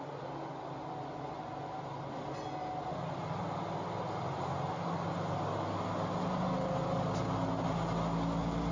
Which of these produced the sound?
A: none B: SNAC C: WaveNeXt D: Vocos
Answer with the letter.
A